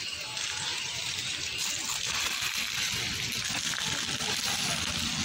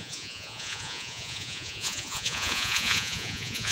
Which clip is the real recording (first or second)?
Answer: first